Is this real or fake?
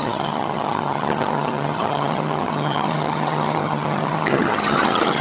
fake